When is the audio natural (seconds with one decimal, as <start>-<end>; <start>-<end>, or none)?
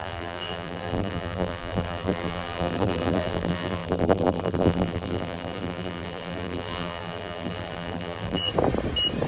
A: 8.5-9.3